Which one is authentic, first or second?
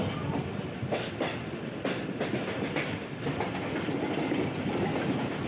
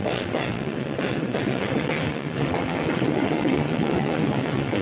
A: first